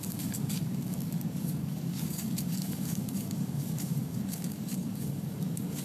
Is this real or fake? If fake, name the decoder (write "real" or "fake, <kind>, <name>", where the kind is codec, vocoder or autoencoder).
fake, codec, DAC